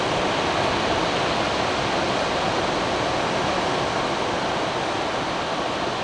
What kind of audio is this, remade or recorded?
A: recorded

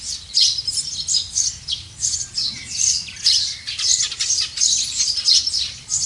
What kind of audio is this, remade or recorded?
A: recorded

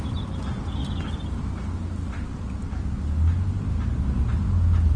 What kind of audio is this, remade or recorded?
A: recorded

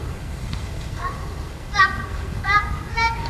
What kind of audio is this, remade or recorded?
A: remade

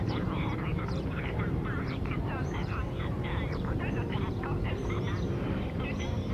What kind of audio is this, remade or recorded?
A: remade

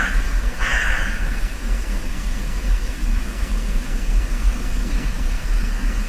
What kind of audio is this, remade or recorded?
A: remade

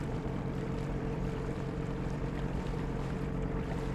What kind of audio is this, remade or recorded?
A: remade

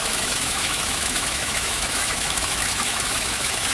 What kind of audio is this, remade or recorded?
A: remade